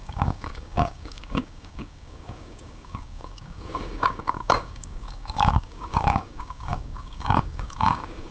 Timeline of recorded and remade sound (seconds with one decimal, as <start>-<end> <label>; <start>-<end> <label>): 0.0-8.3 remade